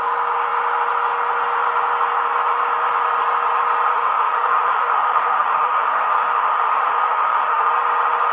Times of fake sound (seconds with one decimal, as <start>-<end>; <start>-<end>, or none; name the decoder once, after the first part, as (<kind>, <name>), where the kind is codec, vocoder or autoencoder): 3.9-7.7 (autoencoder, DAC-VAE)